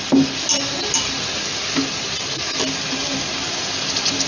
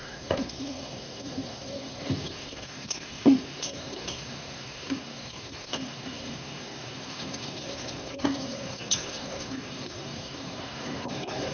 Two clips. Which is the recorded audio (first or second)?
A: first